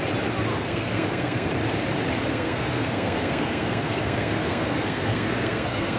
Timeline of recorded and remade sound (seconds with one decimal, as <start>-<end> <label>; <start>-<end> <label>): 0.0-0.5 recorded; 0.5-1.5 remade; 1.5-2.3 recorded; 2.3-6.0 remade